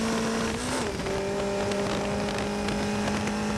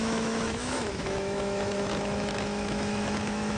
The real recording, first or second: first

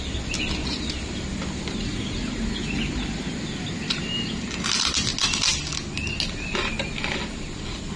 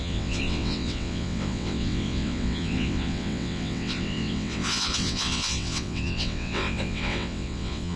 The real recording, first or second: first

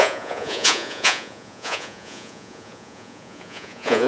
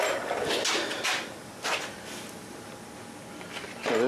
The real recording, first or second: second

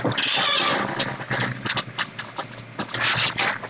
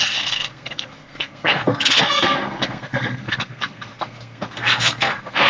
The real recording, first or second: first